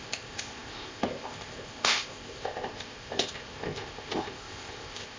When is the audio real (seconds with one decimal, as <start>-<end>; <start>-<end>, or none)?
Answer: none